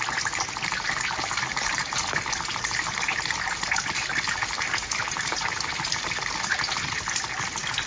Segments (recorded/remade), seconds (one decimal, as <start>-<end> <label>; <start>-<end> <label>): 0.0-7.9 recorded